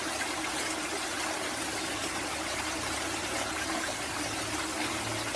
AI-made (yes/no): no